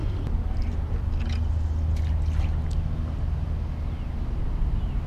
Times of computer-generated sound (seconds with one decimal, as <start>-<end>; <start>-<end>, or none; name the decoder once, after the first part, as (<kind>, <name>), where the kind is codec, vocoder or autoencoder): none

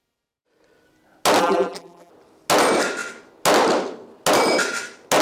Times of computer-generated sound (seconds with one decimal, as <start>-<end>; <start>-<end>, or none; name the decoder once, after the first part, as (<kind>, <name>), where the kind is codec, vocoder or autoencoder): 1.4-2.1 (vocoder, BigVGAN v2)

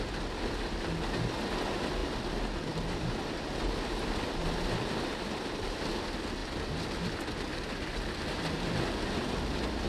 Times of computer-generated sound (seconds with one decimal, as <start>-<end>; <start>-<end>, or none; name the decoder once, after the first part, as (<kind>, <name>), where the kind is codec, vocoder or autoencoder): 2.0-5.9 (vocoder, BigVGAN v2); 6.4-7.0

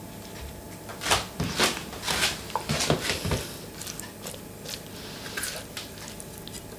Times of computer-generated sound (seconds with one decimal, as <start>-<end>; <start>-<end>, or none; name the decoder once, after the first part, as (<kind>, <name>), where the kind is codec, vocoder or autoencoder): none

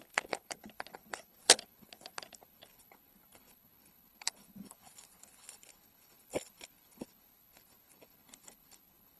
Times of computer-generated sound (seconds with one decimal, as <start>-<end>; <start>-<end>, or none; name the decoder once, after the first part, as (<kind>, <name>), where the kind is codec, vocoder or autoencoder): 0.0-9.2 (codec, HILCodec)

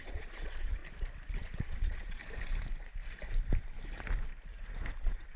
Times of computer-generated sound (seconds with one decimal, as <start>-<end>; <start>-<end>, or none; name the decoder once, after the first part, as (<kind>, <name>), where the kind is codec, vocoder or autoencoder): 0.0-0.8 (vocoder, Vocos); 1.4-2.2; 5.0-5.4

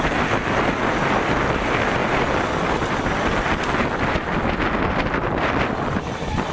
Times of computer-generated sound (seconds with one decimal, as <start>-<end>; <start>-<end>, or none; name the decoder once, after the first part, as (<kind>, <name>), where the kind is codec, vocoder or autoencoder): 0.0-2.0 (vocoder, BigVGAN v2); 4.4-6.5